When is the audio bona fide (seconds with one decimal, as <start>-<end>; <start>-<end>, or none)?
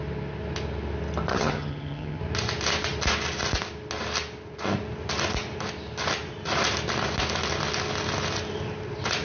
0.0-1.3; 2.2-9.2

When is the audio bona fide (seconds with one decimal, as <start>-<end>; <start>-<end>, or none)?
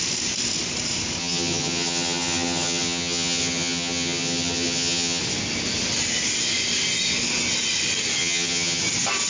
0.0-1.2; 5.2-8.2; 8.8-9.3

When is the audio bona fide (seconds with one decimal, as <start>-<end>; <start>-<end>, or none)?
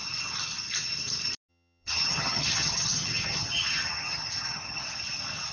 0.0-1.5; 4.8-5.5